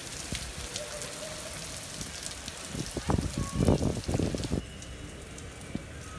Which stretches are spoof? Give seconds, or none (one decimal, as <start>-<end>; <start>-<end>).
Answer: none